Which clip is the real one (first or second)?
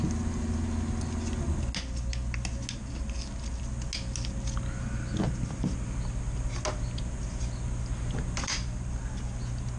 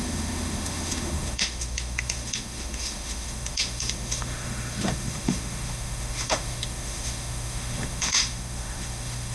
first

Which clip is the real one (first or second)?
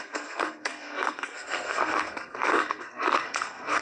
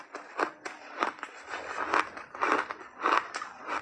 second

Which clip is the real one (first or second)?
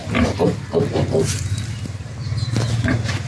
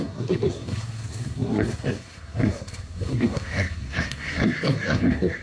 first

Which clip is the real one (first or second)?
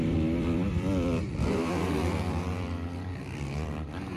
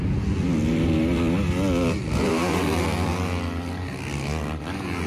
second